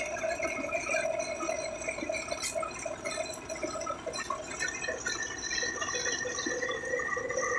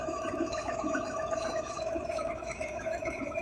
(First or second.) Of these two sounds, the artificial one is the second